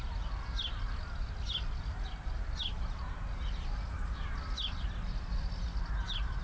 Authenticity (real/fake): real